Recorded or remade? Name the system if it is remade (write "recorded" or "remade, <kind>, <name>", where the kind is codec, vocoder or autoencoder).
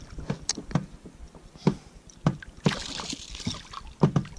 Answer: recorded